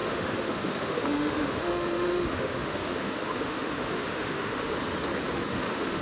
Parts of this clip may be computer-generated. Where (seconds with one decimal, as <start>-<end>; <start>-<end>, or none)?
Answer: 0.0-4.7; 5.5-6.0